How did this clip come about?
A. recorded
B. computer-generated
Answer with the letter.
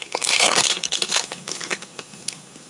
B